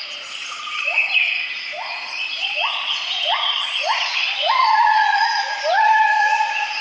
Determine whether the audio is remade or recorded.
remade